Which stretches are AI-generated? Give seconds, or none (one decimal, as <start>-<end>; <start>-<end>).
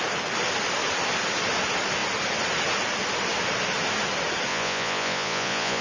4.5-5.8